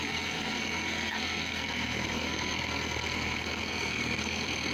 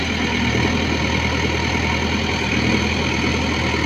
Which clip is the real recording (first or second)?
second